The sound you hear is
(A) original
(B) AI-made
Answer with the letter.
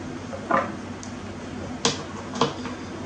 A